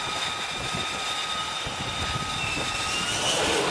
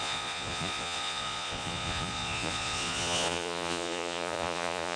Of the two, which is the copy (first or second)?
second